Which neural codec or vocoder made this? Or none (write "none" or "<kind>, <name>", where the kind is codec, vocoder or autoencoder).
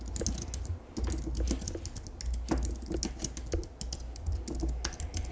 none